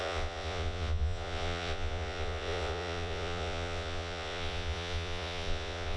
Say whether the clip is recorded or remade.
remade